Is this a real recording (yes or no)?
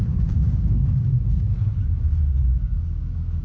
no